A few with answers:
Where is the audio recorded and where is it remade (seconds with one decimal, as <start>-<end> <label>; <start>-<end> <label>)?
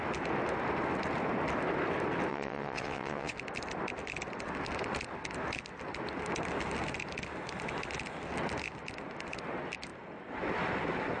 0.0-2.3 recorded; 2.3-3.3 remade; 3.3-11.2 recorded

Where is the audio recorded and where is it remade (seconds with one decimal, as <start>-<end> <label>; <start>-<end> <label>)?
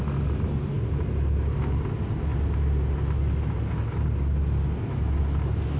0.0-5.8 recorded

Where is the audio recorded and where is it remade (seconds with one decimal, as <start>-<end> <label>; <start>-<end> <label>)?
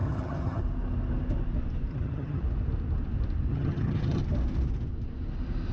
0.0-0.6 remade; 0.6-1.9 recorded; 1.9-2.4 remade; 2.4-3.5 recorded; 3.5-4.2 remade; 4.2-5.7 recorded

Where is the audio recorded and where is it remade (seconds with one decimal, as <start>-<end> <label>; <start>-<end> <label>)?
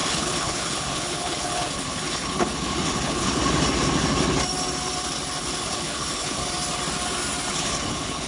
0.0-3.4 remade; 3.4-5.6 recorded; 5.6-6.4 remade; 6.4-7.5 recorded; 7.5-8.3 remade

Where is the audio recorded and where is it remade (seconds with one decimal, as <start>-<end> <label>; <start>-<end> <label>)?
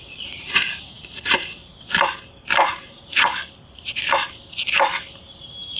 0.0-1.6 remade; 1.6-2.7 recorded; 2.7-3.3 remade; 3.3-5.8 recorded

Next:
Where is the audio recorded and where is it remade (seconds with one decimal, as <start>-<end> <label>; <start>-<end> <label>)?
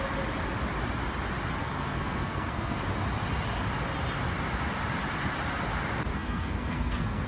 0.0-1.6 recorded; 1.6-2.8 remade; 2.8-6.1 recorded; 6.1-7.3 remade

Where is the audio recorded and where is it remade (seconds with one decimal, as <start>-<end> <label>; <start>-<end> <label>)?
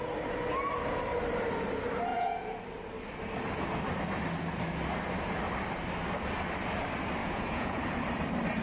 0.0-2.1 recorded; 2.1-2.6 remade; 2.6-7.2 recorded; 7.2-7.8 remade; 7.8-8.6 recorded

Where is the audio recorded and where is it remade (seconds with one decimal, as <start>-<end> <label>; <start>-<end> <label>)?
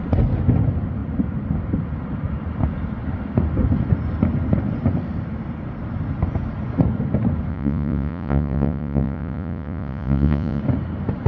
0.0-7.5 recorded; 7.5-10.6 remade; 10.6-11.3 recorded